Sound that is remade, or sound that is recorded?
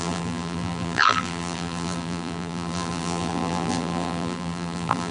remade